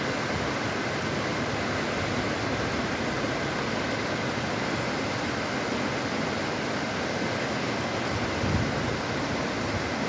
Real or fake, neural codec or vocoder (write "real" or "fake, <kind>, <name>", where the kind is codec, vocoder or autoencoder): real